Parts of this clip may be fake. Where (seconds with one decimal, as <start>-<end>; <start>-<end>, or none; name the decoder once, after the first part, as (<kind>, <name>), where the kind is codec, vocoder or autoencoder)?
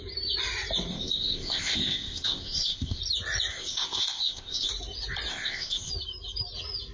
0.9-3.0 (codec, ZipCodec); 3.5-4.7; 5.3-5.9